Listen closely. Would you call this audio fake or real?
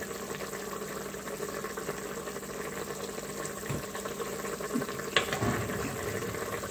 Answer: real